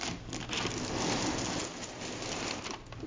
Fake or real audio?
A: real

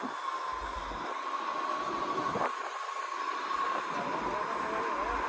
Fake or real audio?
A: real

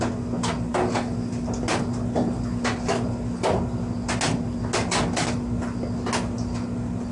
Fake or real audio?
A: real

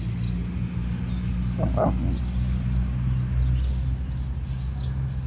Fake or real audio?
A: real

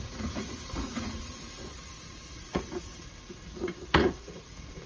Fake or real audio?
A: fake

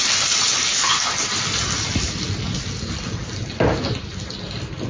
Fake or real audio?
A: real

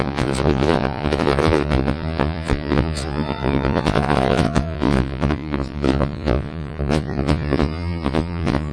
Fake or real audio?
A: fake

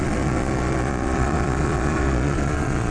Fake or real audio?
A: fake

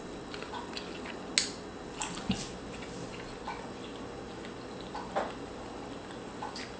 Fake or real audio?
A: real